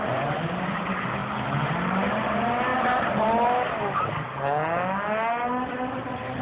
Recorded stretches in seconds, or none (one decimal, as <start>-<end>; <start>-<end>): 0.0-6.4